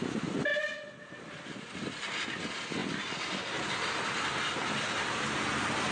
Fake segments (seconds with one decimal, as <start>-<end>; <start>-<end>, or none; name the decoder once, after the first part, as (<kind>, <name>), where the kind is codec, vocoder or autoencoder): none